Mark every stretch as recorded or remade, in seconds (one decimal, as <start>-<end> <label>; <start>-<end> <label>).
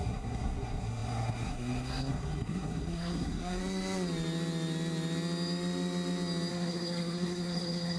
0.0-3.6 remade; 3.6-6.5 recorded; 6.5-8.0 remade